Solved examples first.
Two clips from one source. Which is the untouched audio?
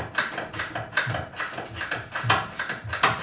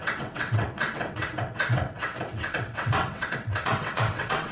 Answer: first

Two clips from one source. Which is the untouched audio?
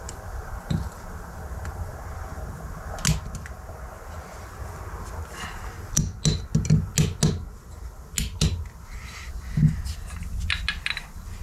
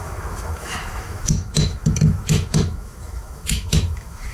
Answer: first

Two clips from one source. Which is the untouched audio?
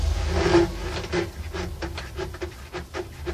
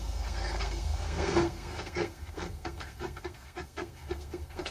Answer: first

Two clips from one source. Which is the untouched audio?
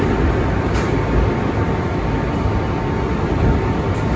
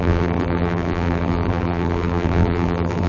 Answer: first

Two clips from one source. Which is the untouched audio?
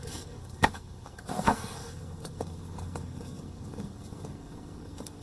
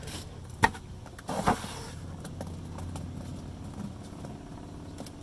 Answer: second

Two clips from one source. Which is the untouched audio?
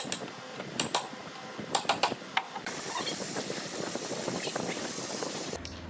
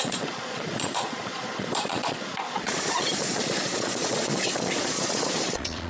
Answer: first